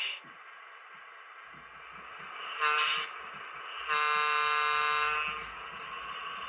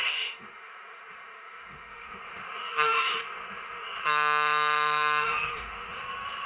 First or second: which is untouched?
first